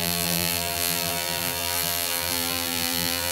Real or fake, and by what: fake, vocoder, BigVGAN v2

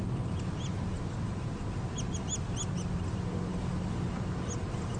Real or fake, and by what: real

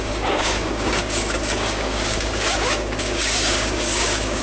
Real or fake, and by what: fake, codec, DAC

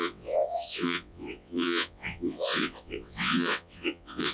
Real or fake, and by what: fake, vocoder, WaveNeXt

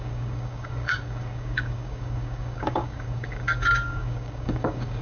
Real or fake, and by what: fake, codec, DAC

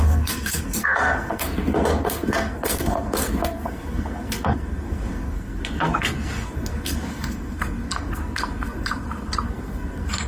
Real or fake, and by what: fake, codec, SNAC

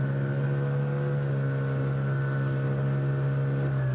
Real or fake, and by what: real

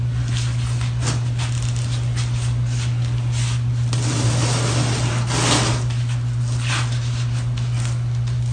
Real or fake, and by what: real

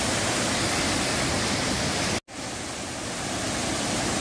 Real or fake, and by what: real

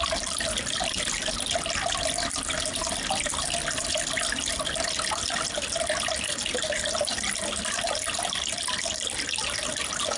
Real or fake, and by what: real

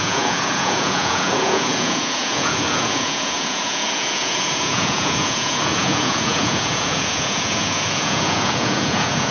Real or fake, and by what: fake, vocoder, Vocos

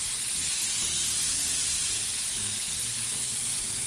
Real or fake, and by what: real